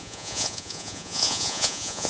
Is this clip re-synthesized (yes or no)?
yes